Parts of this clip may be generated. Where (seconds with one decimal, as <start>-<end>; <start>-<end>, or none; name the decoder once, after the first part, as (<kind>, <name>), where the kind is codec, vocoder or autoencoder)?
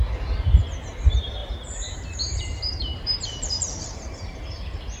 1.4-4.4 (vocoder, BigVGAN v2)